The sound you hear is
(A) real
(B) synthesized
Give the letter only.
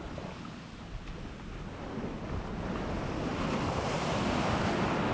A